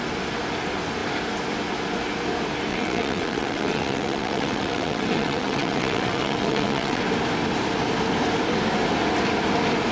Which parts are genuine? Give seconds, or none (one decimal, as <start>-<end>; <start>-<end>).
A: 0.0-2.7; 7.0-9.9